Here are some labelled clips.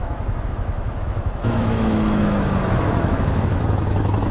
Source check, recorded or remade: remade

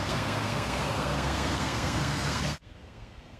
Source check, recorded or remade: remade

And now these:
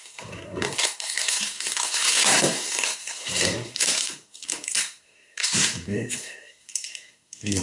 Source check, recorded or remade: remade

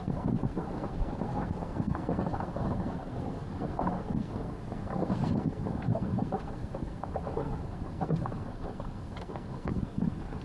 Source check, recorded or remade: remade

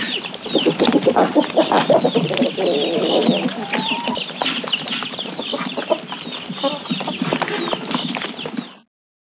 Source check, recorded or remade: recorded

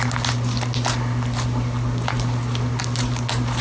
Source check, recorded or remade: recorded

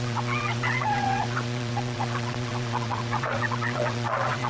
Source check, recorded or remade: remade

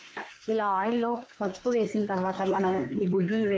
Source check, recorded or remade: remade